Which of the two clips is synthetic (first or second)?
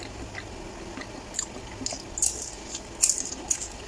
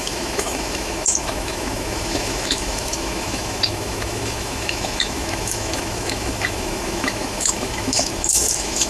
second